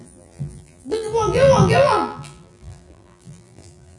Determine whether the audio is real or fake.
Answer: fake